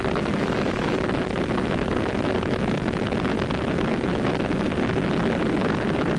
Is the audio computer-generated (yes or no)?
no